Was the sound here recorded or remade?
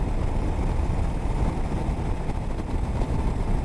recorded